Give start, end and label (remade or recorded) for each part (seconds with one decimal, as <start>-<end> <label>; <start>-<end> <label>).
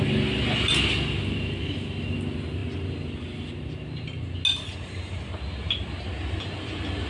0.0-7.1 recorded